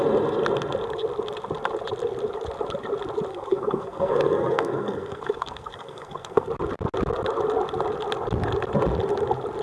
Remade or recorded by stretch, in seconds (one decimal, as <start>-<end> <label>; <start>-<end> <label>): 0.0-3.3 recorded; 3.3-6.5 remade; 6.5-9.6 recorded